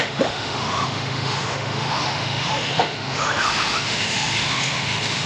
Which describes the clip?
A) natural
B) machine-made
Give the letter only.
B